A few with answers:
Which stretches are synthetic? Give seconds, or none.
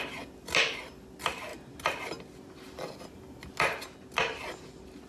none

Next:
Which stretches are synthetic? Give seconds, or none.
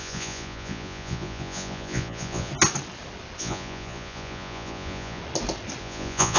0.0-2.5 (vocoder, Vocos); 3.4-5.2; 5.8-6.4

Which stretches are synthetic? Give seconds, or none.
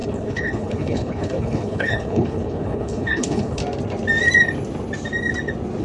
0.0-3.6 (codec, HILCodec)